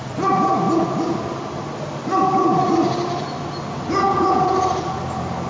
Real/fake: real